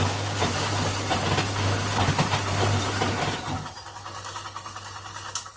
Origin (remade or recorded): recorded